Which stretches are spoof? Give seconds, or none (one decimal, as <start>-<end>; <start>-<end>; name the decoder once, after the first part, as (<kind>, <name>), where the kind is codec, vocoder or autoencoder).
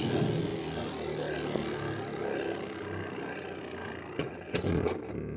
4.2-4.9 (vocoder, WaveNeXt)